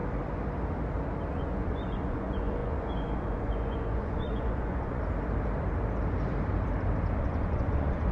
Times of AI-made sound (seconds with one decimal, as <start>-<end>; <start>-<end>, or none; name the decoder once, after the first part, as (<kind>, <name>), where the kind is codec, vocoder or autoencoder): 1.3-5.0 (vocoder, Vocos); 7.2-8.1